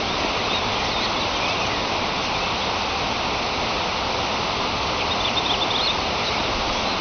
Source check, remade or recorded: recorded